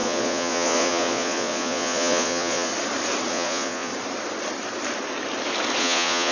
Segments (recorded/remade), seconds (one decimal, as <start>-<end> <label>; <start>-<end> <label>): 0.0-2.7 remade; 2.7-3.3 recorded; 3.3-3.9 remade; 3.9-5.8 recorded; 5.8-6.3 remade